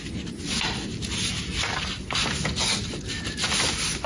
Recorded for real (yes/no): yes